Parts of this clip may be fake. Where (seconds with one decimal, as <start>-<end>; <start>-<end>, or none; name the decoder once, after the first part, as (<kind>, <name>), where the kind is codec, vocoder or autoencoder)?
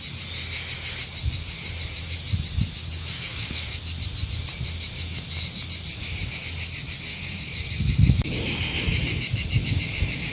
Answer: 3.3-3.8 (codec, DAC); 7.1-8.3